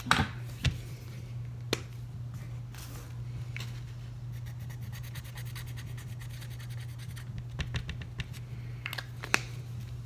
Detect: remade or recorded recorded